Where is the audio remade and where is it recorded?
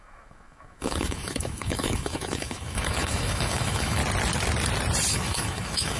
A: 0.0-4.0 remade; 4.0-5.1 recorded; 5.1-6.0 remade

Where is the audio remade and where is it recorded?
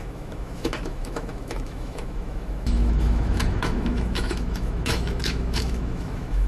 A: 0.0-6.5 remade